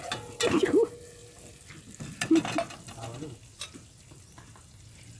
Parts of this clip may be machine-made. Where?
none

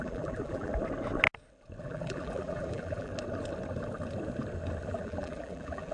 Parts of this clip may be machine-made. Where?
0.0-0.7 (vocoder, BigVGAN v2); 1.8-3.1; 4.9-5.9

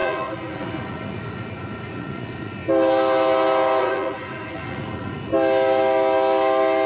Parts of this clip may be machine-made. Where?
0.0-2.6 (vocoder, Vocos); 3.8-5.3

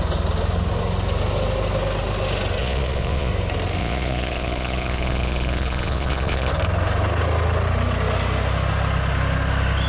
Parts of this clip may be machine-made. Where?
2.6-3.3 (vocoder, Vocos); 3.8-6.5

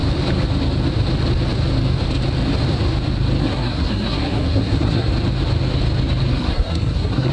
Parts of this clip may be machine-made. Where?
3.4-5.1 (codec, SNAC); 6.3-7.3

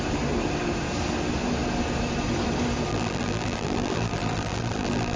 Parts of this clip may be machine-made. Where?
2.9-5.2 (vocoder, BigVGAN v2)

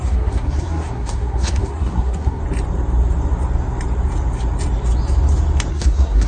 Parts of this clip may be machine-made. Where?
0.0-2.4 (codec, SNAC); 5.7-6.3

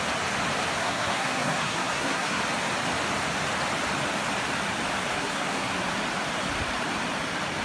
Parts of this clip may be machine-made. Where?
0.8-2.4 (codec, SNAC); 5.1-5.7